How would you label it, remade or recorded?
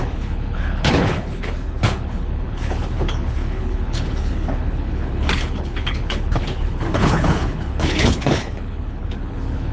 remade